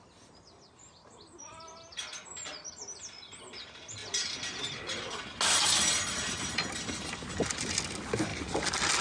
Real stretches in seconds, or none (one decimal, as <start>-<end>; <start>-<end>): 0.0-9.0